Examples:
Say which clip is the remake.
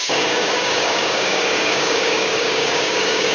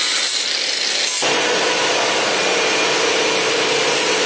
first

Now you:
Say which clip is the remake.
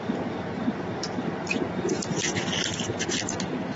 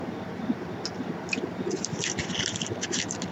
second